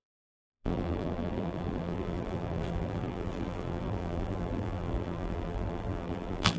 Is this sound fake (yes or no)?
yes